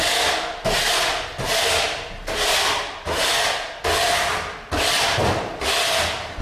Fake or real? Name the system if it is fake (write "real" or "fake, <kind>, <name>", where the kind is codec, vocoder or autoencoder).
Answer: real